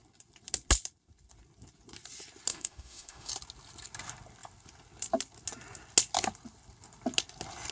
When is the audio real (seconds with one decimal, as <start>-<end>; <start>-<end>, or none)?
0.0-2.5; 3.3-7.7